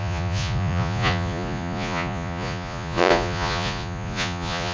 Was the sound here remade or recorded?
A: remade